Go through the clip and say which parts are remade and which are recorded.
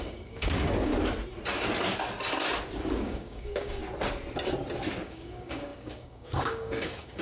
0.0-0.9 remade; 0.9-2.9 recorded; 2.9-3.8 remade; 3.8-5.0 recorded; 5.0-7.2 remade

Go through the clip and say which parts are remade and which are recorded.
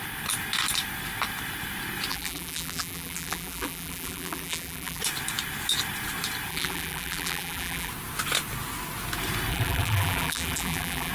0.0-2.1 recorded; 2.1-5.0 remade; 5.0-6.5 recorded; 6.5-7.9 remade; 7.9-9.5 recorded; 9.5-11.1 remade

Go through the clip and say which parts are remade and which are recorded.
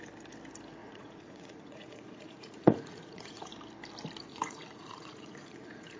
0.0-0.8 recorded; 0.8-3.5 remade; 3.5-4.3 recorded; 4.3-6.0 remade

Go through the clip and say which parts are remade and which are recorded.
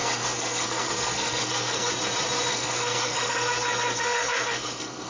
0.0-1.9 remade; 1.9-2.5 recorded; 2.5-5.1 remade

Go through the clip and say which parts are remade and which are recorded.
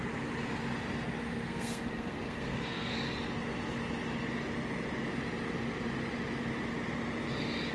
0.0-1.2 recorded; 1.2-2.9 remade; 2.9-7.7 recorded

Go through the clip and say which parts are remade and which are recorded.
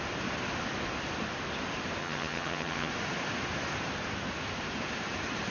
0.0-2.0 recorded; 2.0-2.9 remade; 2.9-5.5 recorded